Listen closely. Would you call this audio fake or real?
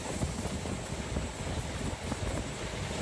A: real